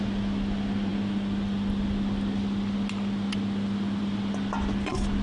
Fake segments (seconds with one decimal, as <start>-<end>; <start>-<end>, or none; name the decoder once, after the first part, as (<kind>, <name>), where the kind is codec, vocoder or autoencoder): none